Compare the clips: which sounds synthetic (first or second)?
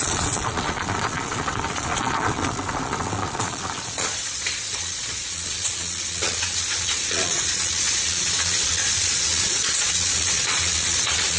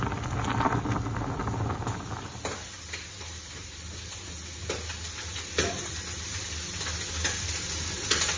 first